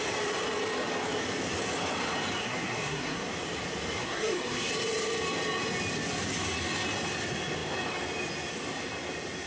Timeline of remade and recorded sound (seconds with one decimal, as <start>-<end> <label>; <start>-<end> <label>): 0.0-2.4 recorded; 2.4-3.3 remade; 3.3-4.0 recorded; 4.0-4.7 remade; 4.7-9.5 recorded